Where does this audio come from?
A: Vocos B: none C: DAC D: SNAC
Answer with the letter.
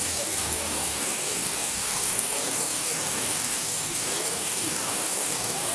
C